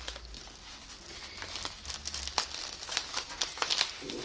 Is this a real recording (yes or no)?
yes